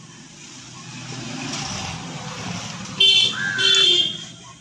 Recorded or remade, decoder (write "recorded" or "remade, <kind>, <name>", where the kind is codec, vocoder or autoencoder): recorded